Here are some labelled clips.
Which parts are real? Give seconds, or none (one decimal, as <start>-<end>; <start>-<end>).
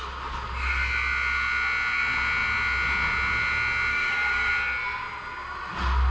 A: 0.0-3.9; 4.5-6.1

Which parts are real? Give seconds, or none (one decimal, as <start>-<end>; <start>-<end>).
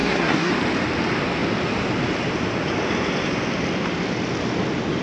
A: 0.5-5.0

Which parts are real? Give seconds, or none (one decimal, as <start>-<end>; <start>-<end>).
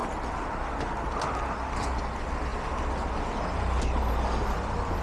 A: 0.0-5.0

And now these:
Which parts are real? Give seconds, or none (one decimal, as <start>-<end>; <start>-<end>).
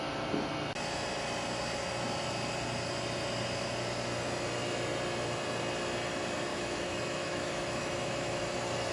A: 0.0-6.5; 8.4-8.9